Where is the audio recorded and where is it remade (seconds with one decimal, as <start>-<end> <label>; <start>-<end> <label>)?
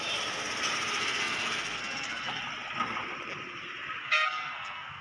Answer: 0.0-1.0 recorded; 1.0-2.4 remade; 2.4-4.0 recorded; 4.0-5.0 remade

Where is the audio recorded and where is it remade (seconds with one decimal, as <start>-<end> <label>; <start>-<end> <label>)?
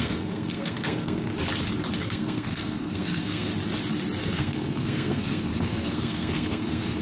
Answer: 0.0-1.3 remade; 1.3-2.0 recorded; 2.0-3.5 remade; 3.5-4.2 recorded; 4.2-7.0 remade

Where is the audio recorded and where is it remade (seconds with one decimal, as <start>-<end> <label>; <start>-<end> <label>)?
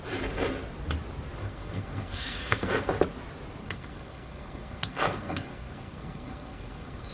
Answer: 0.0-1.4 recorded; 1.4-2.9 remade; 2.9-3.6 recorded; 3.6-7.1 remade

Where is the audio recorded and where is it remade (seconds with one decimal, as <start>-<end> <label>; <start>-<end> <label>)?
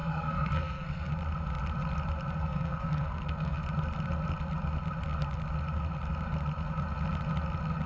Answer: 0.0-1.1 remade; 1.1-2.4 recorded; 2.4-3.6 remade; 3.6-7.9 recorded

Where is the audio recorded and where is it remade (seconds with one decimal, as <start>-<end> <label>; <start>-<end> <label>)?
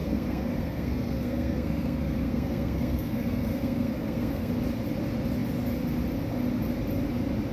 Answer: 0.0-4.5 remade; 4.5-7.5 recorded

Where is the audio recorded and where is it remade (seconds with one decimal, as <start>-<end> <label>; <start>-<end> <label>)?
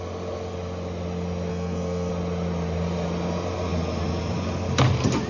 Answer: 0.0-1.5 recorded; 1.5-2.1 remade; 2.1-5.3 recorded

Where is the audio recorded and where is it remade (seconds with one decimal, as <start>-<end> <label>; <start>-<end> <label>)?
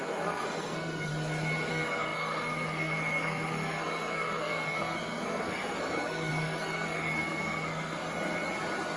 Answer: 0.0-1.1 remade; 1.1-1.7 recorded; 1.7-8.0 remade; 8.0-9.0 recorded